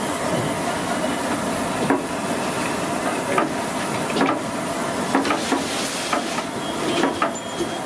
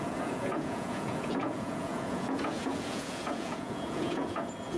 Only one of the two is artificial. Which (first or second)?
second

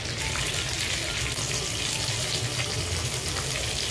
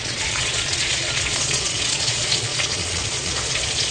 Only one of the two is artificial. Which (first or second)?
second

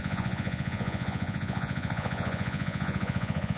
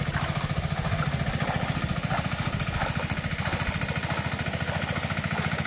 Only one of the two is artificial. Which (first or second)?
first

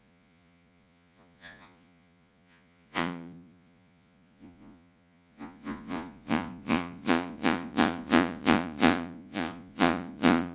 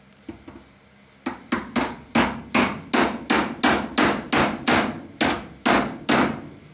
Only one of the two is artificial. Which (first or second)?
first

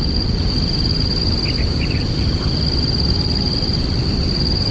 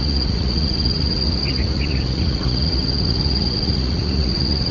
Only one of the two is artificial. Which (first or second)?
second